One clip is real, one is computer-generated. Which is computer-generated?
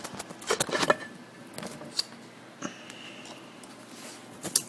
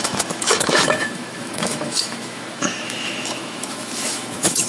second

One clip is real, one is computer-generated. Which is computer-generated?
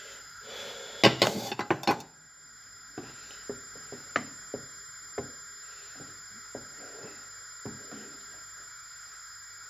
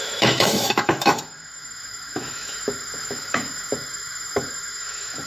second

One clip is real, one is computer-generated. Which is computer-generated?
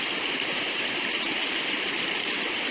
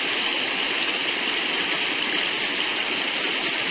first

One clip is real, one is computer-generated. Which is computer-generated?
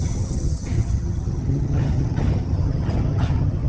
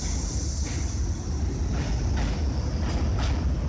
first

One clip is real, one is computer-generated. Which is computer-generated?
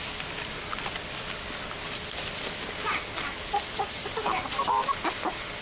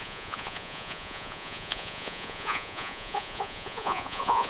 second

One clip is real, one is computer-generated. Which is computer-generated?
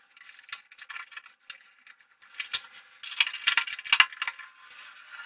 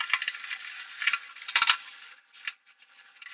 second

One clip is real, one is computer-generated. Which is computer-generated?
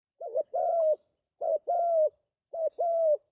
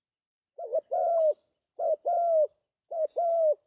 first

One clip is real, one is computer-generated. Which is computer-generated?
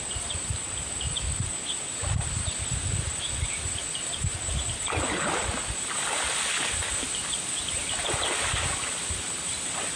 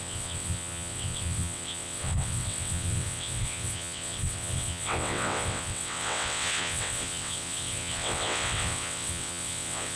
second